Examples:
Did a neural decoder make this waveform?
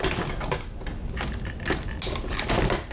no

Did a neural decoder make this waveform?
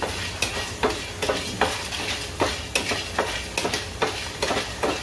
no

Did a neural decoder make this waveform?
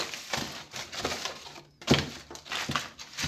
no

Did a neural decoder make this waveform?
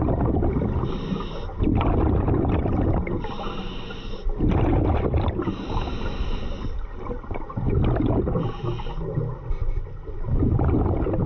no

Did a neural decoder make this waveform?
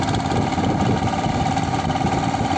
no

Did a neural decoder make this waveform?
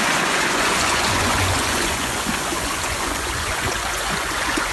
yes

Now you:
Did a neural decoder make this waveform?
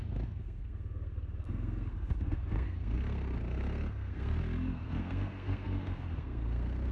yes